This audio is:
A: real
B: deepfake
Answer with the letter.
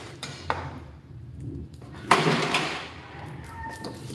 B